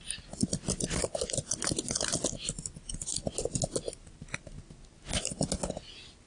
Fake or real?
real